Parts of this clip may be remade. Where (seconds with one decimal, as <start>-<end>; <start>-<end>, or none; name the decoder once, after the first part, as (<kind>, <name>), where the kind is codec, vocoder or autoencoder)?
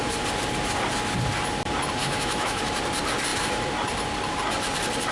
2.0-2.6 (autoencoder, DAC-VAE)